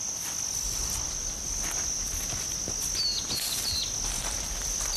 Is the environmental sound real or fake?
real